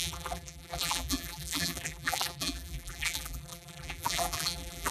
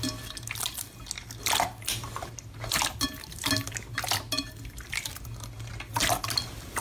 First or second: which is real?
second